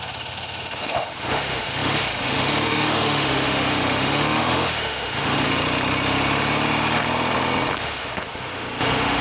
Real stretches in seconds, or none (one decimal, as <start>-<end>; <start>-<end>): 5.6-7.8